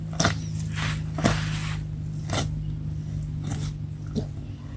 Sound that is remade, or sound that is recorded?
recorded